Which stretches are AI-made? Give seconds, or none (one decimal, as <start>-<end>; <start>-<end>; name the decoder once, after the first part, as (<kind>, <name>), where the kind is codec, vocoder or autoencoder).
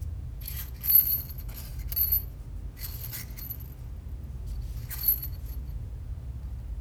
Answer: 0.0-0.8 (vocoder, Vocos); 5.2-6.1